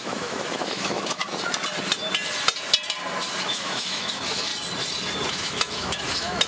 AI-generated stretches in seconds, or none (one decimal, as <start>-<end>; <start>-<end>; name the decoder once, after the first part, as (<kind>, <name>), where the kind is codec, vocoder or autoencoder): 0.0-1.2 (autoencoder, DAC-VAE); 3.4-4.5; 5.3-6.5